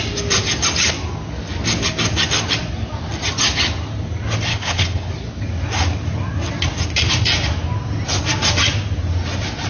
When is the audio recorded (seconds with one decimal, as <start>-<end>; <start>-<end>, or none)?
0.0-4.5; 5.1-9.7